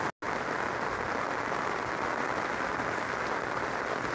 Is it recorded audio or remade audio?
recorded